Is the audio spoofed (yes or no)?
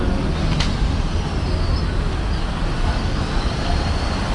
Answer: no